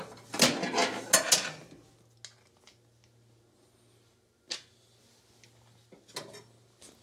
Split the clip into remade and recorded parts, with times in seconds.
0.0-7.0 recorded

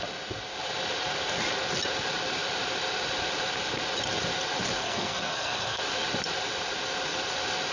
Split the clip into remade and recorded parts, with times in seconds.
0.0-4.8 recorded; 4.8-5.8 remade; 5.8-7.7 recorded

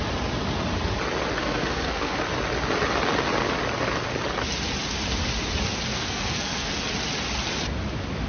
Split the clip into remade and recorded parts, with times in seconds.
0.0-1.4 recorded; 1.4-2.2 remade; 2.2-5.9 recorded; 5.9-6.7 remade; 6.7-8.3 recorded

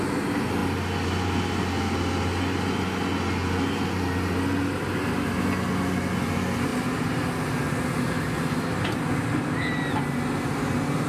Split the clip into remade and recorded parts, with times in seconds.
0.0-11.1 recorded

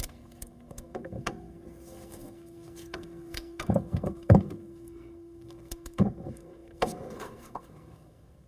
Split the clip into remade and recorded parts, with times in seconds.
0.0-8.5 remade

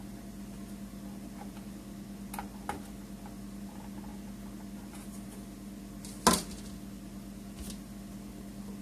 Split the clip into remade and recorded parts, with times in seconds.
0.0-8.8 recorded

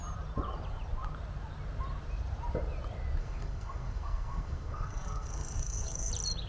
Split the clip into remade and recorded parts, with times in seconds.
0.0-3.2 recorded; 3.2-6.1 remade; 6.1-6.5 recorded

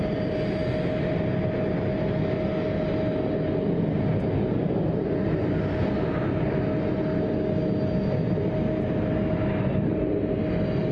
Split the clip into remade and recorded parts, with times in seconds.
0.0-10.9 recorded